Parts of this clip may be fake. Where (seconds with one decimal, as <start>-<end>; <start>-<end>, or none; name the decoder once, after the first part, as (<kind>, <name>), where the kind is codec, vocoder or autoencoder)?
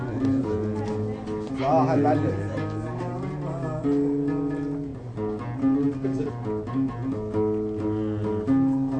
none